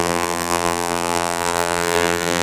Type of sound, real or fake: fake